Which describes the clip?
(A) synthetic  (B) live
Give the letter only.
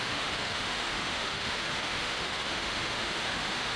A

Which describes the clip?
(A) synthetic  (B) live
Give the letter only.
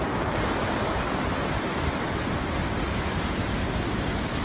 B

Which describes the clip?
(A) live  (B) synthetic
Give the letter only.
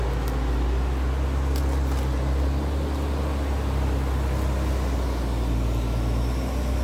A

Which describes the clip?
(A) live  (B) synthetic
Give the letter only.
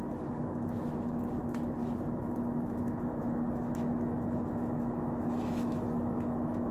B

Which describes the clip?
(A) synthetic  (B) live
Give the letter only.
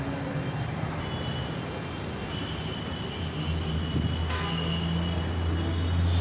B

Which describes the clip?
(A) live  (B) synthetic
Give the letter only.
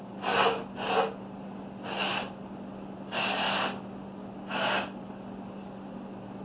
A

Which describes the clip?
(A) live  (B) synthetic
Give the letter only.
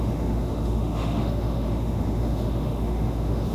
B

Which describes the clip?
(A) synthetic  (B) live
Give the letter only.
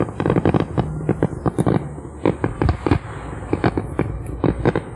B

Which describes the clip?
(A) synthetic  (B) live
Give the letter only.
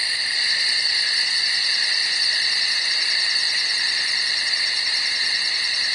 B